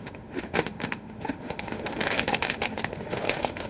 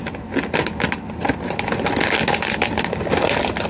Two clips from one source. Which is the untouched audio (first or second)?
second